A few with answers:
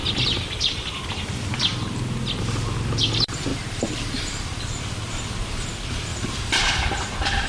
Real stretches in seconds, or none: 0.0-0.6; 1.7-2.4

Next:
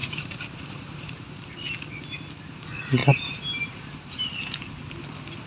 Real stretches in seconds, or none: 1.5-3.0; 4.3-5.5

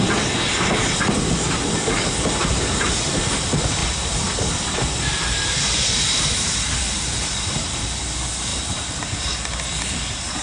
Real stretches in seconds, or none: 0.0-3.8; 8.0-8.5

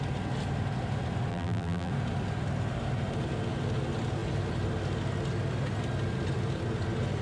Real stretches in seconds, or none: 0.0-1.3; 1.9-7.2

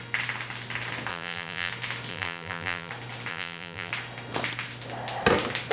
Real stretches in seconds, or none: 0.0-1.1; 1.7-2.1; 2.9-3.3; 3.9-5.7

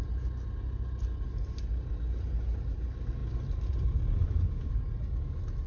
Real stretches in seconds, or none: 0.0-3.2; 4.7-5.7

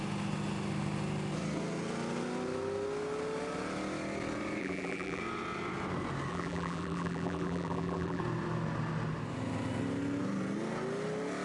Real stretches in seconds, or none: 0.0-4.6; 5.2-6.3; 8.2-11.4

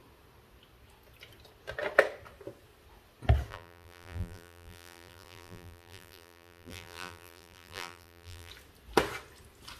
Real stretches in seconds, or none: 0.0-3.5; 8.5-9.8